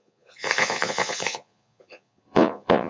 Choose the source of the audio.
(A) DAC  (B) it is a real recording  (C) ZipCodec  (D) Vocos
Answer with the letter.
D